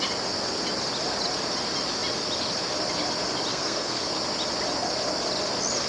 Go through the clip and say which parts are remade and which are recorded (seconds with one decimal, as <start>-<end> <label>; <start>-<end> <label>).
0.0-3.5 recorded; 3.5-4.1 remade; 4.1-5.9 recorded